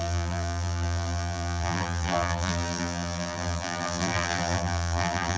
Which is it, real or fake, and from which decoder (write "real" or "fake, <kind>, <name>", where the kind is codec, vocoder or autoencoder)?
fake, vocoder, BigVGAN v2